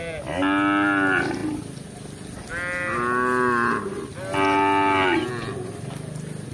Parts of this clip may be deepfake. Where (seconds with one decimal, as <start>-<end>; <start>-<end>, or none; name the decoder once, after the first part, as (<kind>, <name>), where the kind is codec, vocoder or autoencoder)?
none